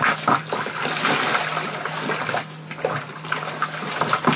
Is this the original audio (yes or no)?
yes